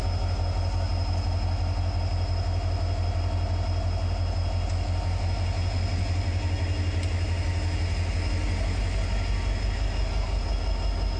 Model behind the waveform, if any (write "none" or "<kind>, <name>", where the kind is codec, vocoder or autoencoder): none